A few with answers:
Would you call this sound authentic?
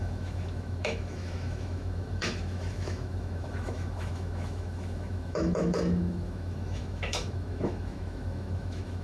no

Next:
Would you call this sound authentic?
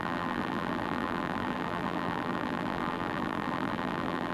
no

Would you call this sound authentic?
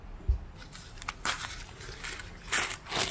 yes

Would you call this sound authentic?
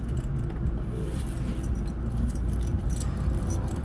yes